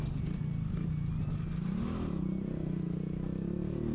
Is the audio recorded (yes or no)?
yes